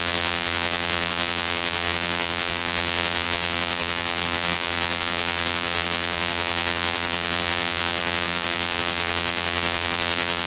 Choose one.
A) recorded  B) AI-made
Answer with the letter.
B